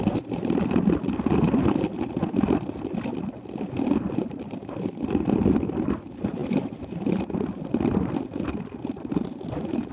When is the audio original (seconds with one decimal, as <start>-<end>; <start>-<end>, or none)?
0.0-9.9